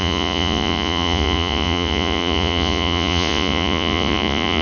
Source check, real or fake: fake